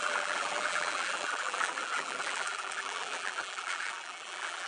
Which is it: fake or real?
fake